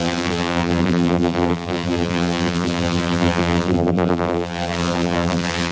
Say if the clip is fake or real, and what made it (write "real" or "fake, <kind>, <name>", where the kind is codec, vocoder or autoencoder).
fake, vocoder, BigVGAN v2